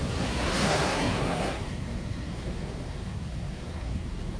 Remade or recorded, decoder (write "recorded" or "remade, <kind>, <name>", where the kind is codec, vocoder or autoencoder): remade, codec, SNAC